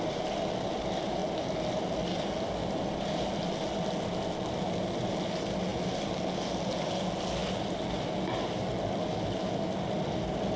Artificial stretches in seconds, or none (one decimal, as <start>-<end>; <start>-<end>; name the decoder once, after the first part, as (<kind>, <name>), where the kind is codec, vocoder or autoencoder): none